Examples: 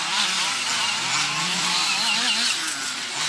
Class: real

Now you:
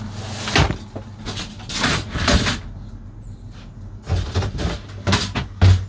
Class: real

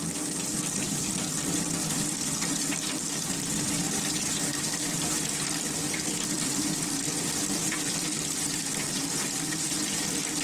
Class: fake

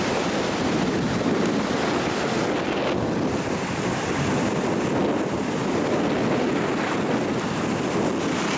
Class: real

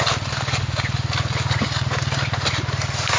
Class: real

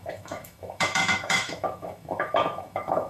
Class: fake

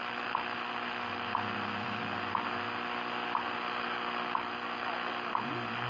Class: real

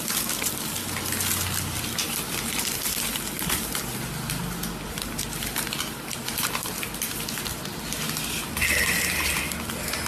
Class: real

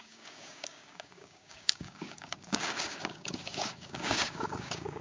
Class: fake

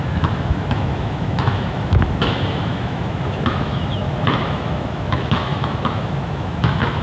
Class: fake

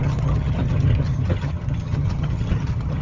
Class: fake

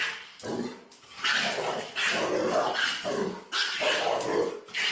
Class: real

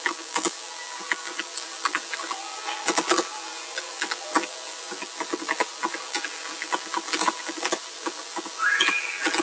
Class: fake